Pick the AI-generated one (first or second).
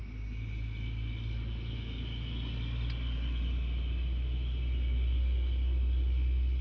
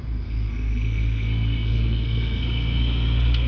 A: second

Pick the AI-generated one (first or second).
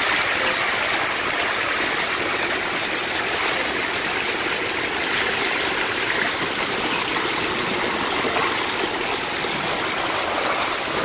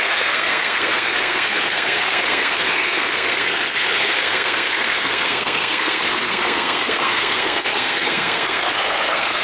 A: second